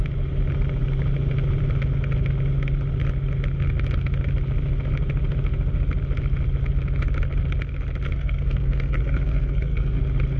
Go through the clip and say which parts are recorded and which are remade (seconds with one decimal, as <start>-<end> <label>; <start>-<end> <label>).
0.0-8.1 recorded; 8.1-10.0 remade; 10.0-10.4 recorded